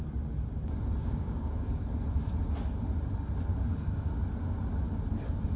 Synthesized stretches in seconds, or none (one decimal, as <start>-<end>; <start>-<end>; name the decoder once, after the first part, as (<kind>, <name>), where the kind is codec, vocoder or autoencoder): 1.0-1.8 (codec, DAC); 3.5-4.1